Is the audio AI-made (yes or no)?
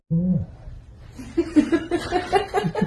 no